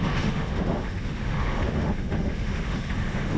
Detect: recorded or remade remade